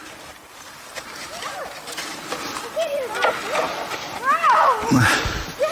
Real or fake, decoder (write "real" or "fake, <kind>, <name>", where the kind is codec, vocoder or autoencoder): fake, vocoder, BigVGAN v2